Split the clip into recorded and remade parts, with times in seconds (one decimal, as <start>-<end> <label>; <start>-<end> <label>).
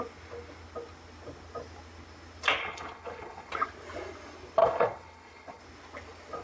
0.0-2.6 recorded; 2.6-3.5 remade; 3.5-4.6 recorded; 4.6-5.6 remade; 5.6-6.4 recorded